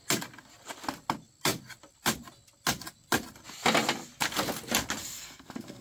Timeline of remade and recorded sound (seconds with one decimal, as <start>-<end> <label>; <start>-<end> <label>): 0.0-5.0 recorded; 5.0-5.8 remade